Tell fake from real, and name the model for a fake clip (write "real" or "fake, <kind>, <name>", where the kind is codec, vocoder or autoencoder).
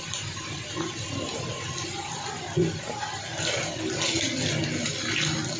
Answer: real